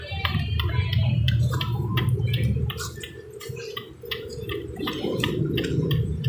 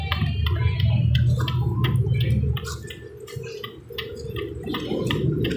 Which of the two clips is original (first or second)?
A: second